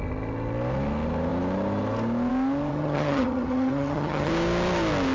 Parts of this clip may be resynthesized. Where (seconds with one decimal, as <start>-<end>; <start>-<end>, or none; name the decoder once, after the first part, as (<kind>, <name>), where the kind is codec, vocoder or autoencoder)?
2.7-4.3 (vocoder, HiFi-GAN)